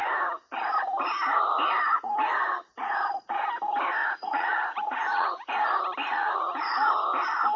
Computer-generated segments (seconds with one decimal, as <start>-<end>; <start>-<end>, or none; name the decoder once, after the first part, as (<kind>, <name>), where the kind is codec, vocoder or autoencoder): 4.0-5.5 (vocoder, Vocos); 6.0-6.9